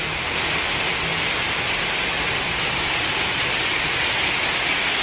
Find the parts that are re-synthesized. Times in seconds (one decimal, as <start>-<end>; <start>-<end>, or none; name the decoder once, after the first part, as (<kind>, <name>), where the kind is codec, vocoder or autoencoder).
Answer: 1.1-4.1 (vocoder, BigVGAN v2)